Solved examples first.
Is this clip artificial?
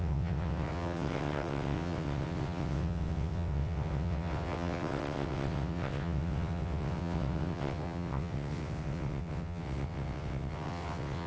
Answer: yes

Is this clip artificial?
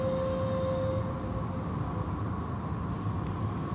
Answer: no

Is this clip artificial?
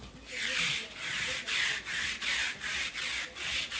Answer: no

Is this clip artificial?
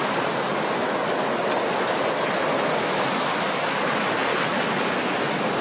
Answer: no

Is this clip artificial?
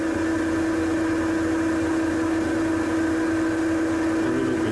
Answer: no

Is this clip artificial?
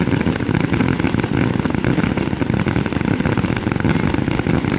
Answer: no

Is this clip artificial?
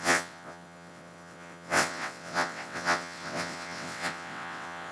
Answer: yes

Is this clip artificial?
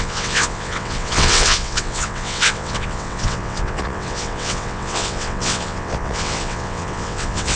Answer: yes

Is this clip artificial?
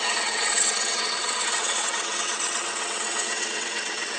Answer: yes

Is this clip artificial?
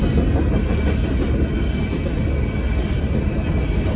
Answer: no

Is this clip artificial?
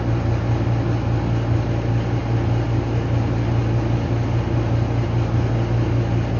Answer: no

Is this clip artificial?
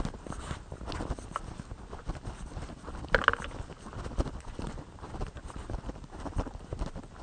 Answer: no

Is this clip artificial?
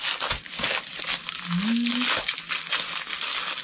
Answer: no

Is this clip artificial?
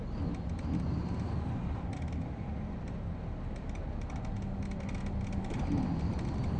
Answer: no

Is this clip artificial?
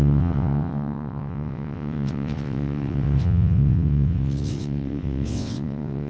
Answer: yes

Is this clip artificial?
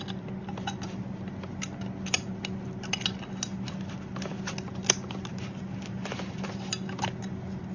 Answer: no